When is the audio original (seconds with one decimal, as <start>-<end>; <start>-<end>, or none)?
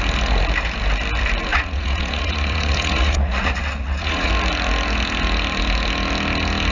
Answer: 0.0-1.5; 4.3-6.7